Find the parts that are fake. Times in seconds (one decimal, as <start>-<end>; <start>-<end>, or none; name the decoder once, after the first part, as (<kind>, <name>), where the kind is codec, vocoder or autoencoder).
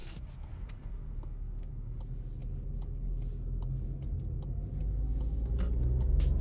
0.0-2.0 (codec, SNAC)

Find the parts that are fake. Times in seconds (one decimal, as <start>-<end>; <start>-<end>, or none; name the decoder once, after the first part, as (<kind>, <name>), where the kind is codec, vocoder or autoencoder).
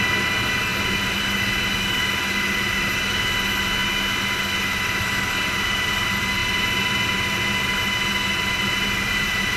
none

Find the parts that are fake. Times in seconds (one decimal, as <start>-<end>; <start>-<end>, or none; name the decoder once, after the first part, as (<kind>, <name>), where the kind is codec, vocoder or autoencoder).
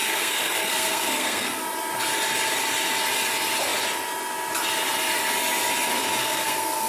0.0-1.6 (codec, SNAC); 6.2-6.9